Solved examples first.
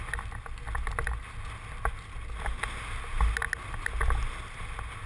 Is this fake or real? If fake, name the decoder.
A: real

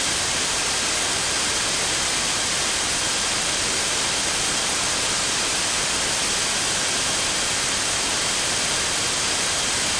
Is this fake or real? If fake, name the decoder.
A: real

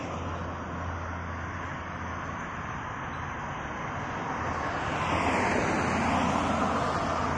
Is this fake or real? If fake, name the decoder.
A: real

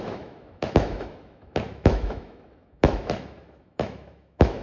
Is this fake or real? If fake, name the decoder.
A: fake, autoencoder, DAC-VAE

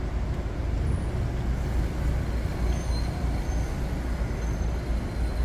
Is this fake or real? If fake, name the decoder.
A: real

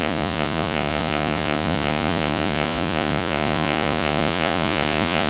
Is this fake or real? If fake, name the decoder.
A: fake, vocoder, Vocos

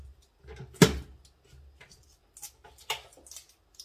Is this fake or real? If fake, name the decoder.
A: real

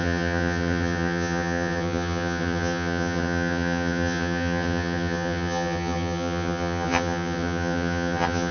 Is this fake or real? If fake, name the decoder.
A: fake, vocoder, HiFi-GAN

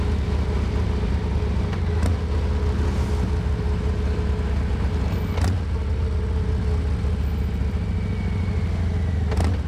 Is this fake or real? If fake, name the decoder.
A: real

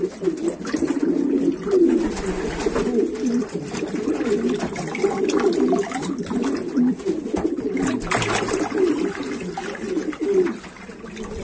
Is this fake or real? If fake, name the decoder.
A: real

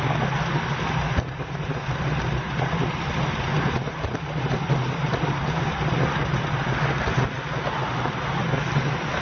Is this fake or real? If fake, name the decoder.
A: real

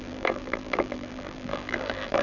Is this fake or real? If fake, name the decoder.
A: fake, vocoder, BigVGAN v2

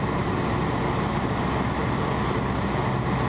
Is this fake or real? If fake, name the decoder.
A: real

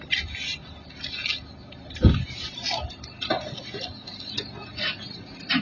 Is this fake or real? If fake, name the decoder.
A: real